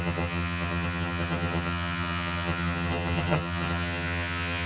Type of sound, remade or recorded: remade